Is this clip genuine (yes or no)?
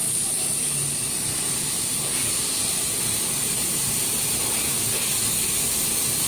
yes